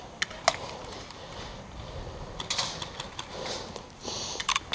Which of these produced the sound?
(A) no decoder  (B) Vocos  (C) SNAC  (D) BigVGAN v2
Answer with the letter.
A